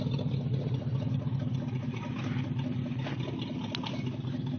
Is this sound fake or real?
real